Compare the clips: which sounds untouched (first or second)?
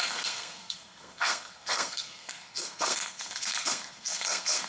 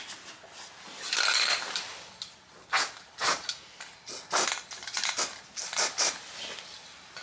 second